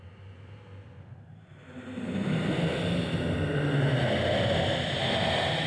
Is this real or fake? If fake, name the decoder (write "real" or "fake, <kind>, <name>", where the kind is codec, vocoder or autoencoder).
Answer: real